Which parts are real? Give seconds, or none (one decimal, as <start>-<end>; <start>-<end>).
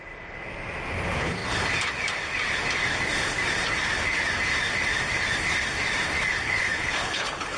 0.0-6.3